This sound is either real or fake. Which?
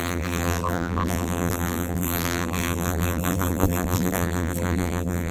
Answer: fake